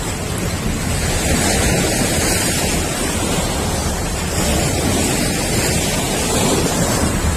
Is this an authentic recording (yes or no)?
yes